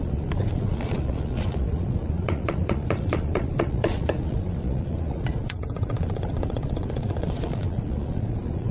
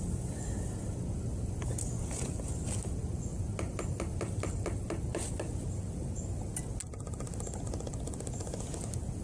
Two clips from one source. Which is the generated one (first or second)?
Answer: first